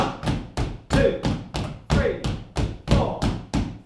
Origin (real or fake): real